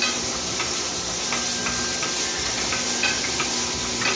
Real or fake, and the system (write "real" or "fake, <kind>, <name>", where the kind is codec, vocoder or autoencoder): real